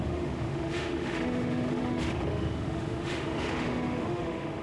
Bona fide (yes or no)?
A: no